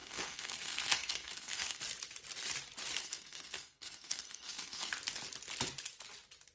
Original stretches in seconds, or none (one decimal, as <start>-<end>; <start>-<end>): 1.8-3.0; 4.9-6.5